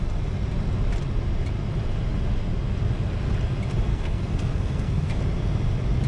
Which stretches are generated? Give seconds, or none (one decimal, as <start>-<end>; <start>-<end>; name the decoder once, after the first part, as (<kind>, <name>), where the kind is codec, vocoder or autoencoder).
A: 3.9-5.2 (codec, SNAC)